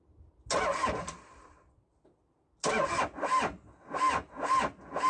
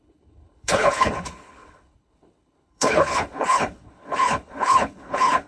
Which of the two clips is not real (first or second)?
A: second